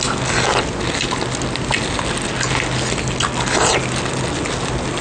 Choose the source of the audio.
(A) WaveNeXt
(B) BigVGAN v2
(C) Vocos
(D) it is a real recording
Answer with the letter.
D